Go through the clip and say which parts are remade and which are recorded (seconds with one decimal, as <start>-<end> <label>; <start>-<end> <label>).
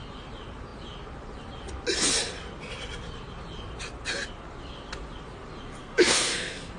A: 0.0-5.8 recorded; 5.8-6.8 remade